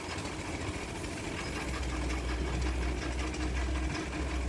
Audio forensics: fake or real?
real